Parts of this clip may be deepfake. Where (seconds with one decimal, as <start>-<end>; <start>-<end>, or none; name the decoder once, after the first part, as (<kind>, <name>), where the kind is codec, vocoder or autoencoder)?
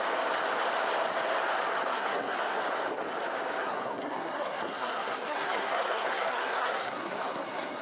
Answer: 1.9-2.6 (codec, SNAC); 3.6-7.8